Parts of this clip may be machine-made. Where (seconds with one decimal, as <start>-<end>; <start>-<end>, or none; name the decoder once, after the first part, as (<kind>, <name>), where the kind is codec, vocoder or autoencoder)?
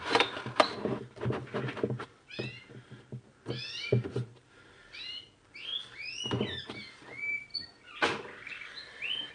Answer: none